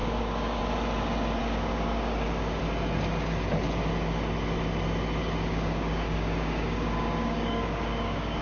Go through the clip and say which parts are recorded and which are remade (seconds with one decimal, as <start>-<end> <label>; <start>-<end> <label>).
0.0-0.6 remade; 0.6-1.4 recorded; 1.4-2.6 remade; 2.6-5.2 recorded; 5.2-8.4 remade